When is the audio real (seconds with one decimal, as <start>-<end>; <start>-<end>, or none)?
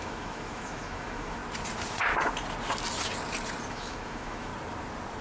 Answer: 1.4-3.7; 4.5-5.2